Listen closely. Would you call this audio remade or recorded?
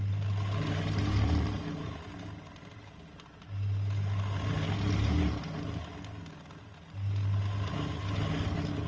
recorded